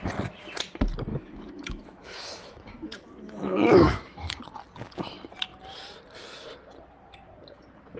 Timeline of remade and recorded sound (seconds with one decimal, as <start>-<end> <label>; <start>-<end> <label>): 0.0-1.1 recorded; 1.1-4.4 remade; 4.4-8.0 recorded